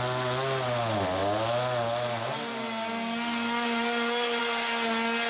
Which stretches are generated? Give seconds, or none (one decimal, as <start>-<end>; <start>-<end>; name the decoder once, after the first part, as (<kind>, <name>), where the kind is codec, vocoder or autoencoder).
none